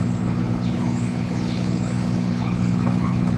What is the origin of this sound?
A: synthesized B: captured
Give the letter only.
A